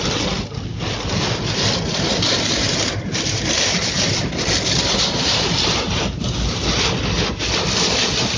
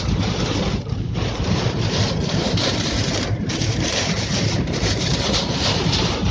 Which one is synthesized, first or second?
second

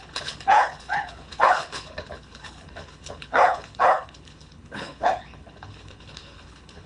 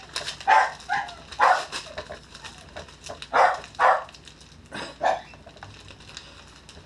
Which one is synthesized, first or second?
first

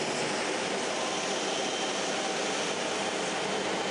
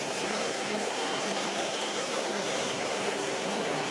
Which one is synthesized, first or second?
second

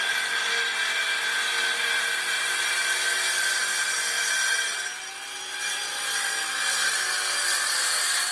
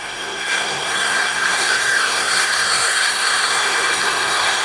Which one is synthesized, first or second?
second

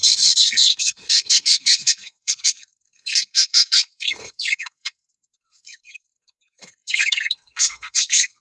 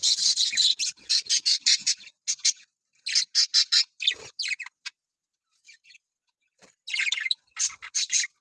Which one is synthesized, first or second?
first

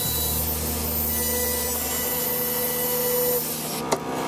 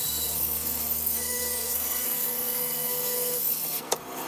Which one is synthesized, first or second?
second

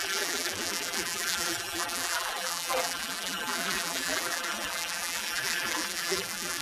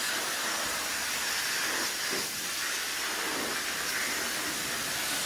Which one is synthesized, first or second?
first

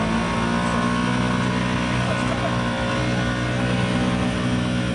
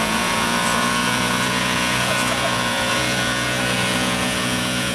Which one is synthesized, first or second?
second